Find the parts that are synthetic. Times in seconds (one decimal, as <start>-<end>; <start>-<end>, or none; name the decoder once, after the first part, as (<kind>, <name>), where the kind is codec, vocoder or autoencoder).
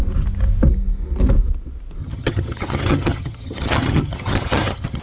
2.0-5.0 (vocoder, HiFi-GAN)